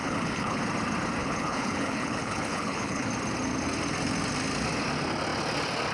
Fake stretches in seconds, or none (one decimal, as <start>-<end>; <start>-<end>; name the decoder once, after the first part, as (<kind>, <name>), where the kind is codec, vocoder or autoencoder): 0.0-0.6 (codec, HILCodec); 1.2-3.1